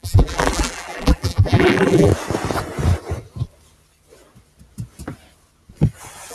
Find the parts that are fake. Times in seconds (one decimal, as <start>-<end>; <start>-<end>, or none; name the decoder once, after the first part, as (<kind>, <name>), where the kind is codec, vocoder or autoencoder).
0.0-2.1 (vocoder, BigVGAN v2)